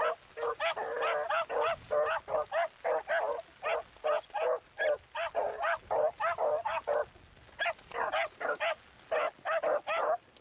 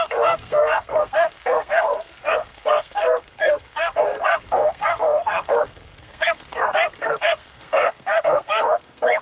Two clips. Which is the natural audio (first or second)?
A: first